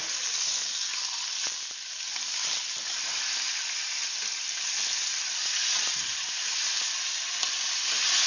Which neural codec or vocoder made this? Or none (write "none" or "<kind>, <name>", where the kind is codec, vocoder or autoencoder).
none